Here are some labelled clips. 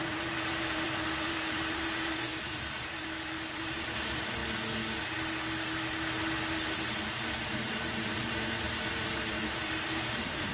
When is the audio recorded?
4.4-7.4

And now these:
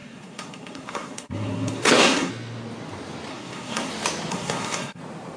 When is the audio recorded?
2.3-3.3; 3.9-4.3; 5.0-5.4

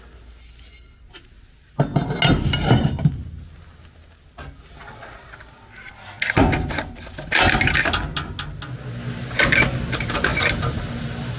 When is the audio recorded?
0.0-11.4

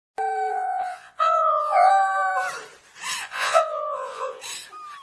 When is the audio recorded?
0.0-0.5; 1.9-3.2; 4.4-5.0